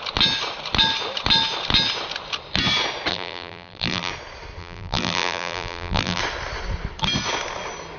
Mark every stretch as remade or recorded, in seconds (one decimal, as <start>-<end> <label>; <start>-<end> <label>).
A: 0.0-3.1 recorded; 3.1-4.1 remade; 4.1-4.6 recorded; 4.6-6.2 remade; 6.2-8.0 recorded